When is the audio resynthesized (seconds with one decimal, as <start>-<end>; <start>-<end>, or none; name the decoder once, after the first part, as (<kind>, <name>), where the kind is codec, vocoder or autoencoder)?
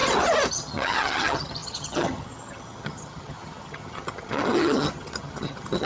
0.5-5.9 (vocoder, HiFi-GAN)